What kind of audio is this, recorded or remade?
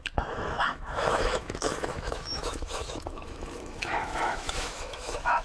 remade